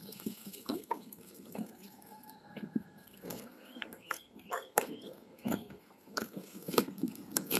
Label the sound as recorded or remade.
remade